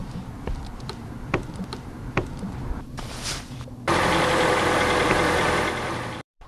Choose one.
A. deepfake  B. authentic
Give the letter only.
A